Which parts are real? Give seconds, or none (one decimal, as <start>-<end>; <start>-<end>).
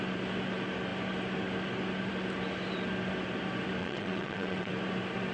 0.0-3.8; 4.7-5.3